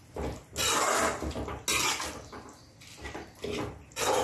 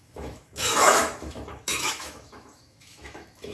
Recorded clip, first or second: first